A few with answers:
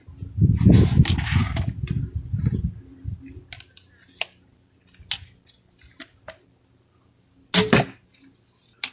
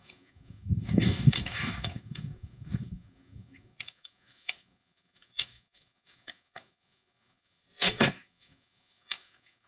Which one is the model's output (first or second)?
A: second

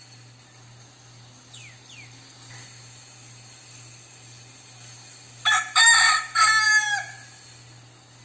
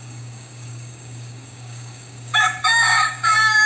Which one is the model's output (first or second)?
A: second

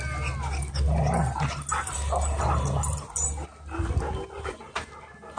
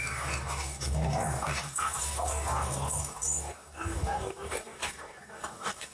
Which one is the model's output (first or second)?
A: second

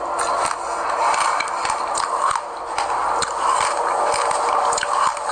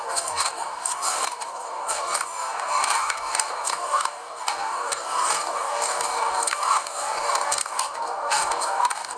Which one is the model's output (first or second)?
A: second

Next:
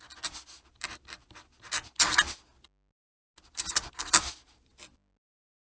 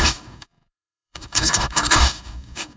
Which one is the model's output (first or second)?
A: second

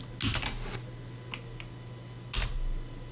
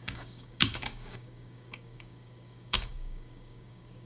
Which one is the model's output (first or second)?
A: second